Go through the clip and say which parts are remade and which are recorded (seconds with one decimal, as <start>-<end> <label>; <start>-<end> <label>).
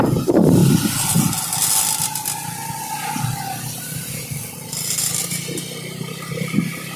0.0-7.0 recorded